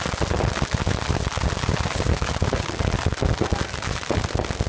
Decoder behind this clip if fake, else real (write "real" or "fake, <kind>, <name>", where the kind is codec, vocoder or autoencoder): real